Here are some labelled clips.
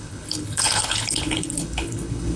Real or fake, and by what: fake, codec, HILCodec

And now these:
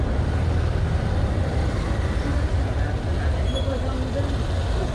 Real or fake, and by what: real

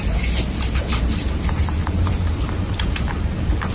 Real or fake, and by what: fake, vocoder, BigVGAN v2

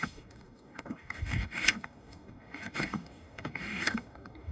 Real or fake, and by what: fake, codec, DAC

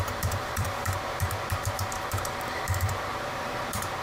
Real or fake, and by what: fake, vocoder, BigVGAN v2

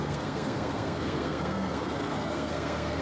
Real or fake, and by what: fake, codec, SNAC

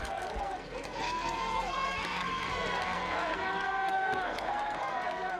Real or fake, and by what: fake, codec, SNAC